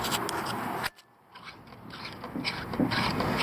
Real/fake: real